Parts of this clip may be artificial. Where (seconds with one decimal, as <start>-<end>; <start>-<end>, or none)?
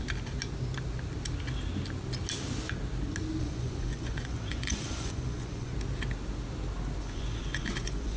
3.4-5.7; 7.0-8.2